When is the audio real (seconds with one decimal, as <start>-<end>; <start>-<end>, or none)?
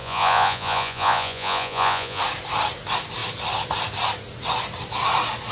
2.2-5.5